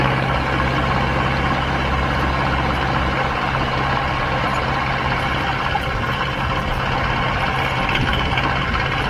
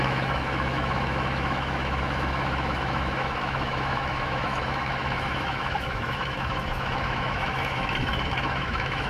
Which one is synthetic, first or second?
second